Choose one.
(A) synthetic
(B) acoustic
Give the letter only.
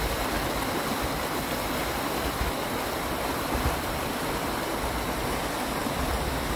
B